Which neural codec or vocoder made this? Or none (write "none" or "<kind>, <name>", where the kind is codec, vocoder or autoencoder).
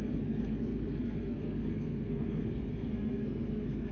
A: codec, SNAC